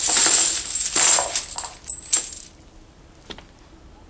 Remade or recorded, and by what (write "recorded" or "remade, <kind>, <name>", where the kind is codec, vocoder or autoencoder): recorded